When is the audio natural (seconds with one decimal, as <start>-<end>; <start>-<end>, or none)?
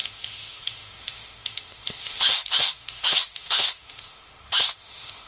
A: none